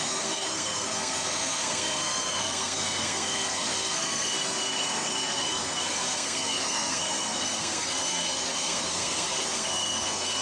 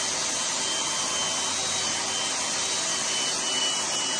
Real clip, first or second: second